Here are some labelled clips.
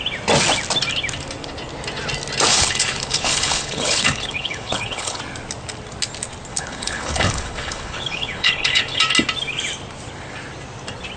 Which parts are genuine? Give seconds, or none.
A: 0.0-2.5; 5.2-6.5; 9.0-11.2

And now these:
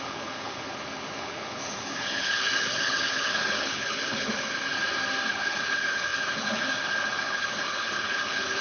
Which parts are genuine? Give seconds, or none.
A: 4.8-5.3

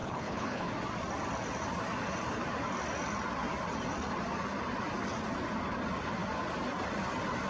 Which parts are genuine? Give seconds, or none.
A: 0.7-7.5

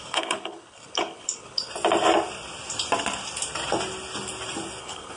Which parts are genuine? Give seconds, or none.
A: 1.7-4.8

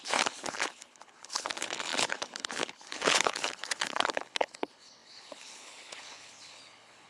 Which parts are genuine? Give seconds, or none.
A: none